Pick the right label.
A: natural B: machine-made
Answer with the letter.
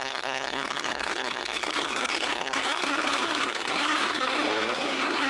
B